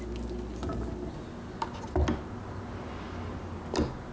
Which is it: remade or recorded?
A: recorded